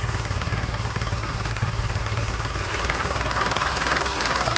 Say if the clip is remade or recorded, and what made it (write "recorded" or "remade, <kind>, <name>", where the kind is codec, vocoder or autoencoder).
remade, codec, SNAC